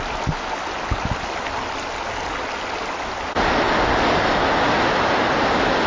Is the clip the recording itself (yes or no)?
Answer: yes